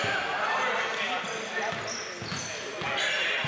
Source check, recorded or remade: recorded